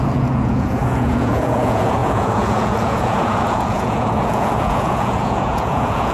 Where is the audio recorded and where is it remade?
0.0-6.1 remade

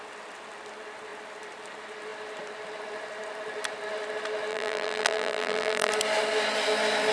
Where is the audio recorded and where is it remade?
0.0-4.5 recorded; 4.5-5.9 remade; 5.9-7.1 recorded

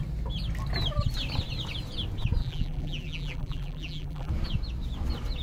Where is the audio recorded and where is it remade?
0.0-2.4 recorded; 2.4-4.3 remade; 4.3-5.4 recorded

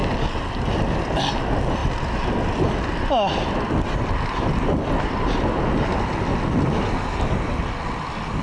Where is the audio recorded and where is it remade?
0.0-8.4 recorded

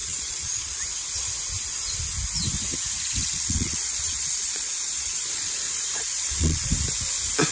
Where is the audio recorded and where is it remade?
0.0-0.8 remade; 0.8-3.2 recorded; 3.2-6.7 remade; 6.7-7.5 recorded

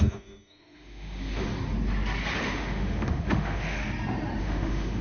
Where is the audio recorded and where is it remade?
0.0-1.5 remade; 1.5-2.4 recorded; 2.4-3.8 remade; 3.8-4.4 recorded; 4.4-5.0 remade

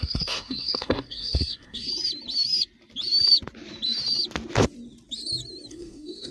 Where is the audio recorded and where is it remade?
0.0-1.9 remade; 1.9-5.7 recorded; 5.7-6.3 remade

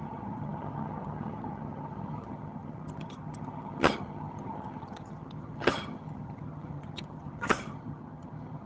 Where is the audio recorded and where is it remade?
0.0-8.7 remade